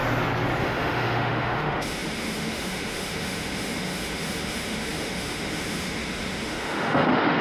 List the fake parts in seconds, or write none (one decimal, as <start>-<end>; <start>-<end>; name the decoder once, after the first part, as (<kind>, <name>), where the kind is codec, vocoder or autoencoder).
0.6-7.4 (autoencoder, DAC-VAE)